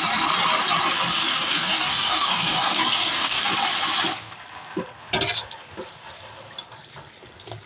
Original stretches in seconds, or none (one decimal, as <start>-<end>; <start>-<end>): 0.0-1.3; 3.5-7.7